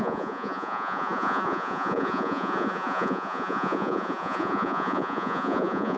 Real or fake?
fake